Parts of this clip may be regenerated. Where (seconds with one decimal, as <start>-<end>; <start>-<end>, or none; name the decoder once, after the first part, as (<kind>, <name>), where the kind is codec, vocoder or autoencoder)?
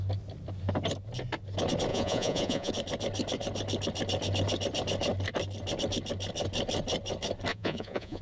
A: 1.9-2.7 (vocoder, Vocos); 7.5-8.2